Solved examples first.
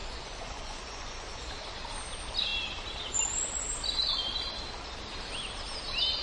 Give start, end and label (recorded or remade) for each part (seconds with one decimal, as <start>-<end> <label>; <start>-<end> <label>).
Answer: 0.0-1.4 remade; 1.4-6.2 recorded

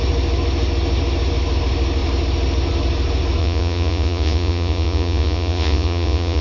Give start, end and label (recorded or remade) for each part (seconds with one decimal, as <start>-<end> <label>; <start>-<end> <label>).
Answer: 0.0-3.4 recorded; 3.4-6.4 remade

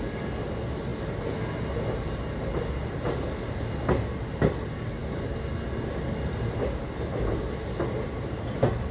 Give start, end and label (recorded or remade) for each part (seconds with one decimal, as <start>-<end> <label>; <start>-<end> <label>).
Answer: 0.0-8.9 recorded

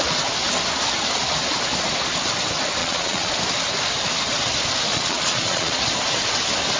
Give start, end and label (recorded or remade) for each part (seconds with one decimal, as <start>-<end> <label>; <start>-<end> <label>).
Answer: 0.0-2.8 recorded; 2.8-3.3 remade; 3.3-4.9 recorded; 4.9-5.8 remade; 5.8-6.8 recorded

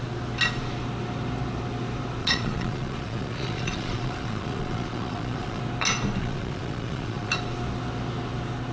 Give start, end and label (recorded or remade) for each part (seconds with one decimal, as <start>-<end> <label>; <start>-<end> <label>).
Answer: 0.0-2.2 recorded; 2.2-5.6 remade; 5.6-6.2 recorded; 6.2-7.3 remade; 7.3-8.7 recorded

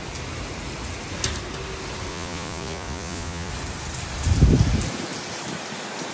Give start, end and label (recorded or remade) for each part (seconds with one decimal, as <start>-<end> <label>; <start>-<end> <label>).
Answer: 0.0-2.1 recorded; 2.1-3.5 remade; 3.5-6.1 recorded

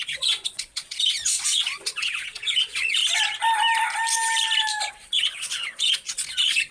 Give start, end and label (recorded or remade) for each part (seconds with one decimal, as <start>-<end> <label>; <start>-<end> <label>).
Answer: 0.0-3.0 remade; 3.0-4.9 recorded; 4.9-6.7 remade

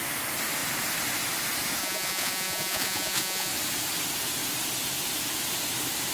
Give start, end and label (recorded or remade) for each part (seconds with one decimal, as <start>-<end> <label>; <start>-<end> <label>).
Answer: 0.0-1.8 recorded; 1.8-3.5 remade; 3.5-6.1 recorded